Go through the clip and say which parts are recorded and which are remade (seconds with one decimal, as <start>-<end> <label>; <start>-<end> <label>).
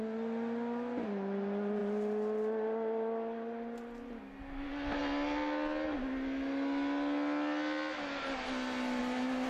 0.0-9.5 recorded